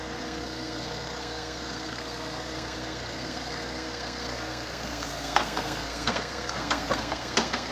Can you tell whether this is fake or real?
fake